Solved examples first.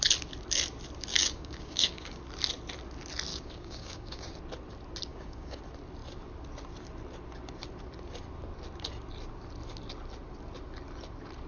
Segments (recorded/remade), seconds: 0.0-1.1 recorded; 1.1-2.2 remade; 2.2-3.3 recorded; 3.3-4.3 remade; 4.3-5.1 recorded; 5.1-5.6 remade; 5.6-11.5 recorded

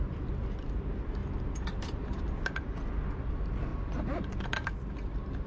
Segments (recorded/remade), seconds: 0.0-1.2 recorded; 1.2-2.1 remade; 2.1-3.7 recorded; 3.7-4.7 remade; 4.7-5.5 recorded